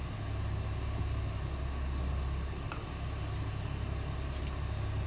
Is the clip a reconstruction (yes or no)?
no